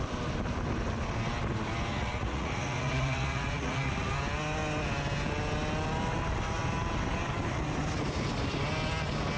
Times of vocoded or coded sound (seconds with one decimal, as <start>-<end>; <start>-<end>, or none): 1.9-4.1